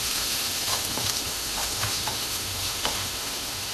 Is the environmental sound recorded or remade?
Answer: remade